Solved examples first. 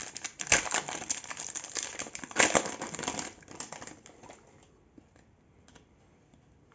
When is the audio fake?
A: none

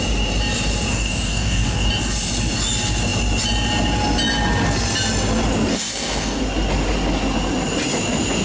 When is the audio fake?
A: 0.9-1.9 (codec, DAC); 5.7-6.4

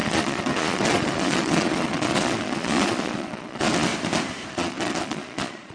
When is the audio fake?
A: 0.0-3.9 (vocoder, Vocos); 4.5-5.7